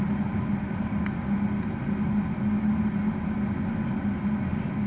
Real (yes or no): yes